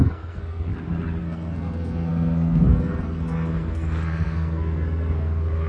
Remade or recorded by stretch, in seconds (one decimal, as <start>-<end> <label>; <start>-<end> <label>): 0.0-0.7 remade; 0.7-1.2 recorded; 1.2-5.7 remade